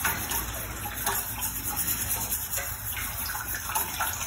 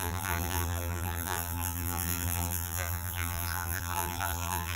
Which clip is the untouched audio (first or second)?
first